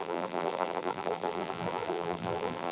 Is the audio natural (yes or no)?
no